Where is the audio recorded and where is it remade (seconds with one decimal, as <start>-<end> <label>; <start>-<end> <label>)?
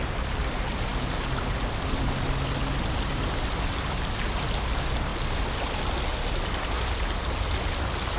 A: 0.0-8.2 recorded